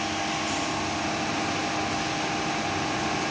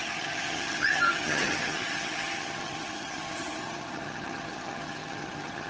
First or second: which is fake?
second